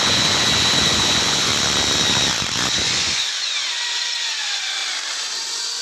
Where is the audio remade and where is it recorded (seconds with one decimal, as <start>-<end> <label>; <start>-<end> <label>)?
0.0-1.5 remade; 1.5-2.7 recorded; 2.7-4.8 remade; 4.8-5.3 recorded; 5.3-5.8 remade